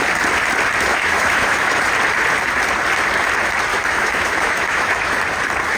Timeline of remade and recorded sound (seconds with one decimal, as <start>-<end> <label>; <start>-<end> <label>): 0.0-0.9 recorded; 0.9-1.8 remade; 1.8-3.7 recorded; 3.7-5.2 remade; 5.2-5.8 recorded